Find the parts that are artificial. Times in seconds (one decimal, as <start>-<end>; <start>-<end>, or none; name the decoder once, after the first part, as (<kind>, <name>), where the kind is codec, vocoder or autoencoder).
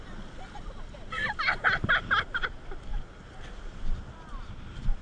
none